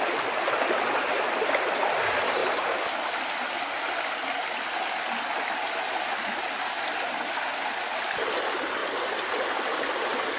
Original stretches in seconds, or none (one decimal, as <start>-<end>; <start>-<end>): 0.0-10.4